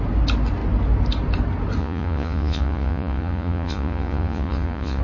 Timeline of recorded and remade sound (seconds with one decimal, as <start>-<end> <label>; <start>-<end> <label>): 0.0-1.8 recorded; 1.8-5.0 remade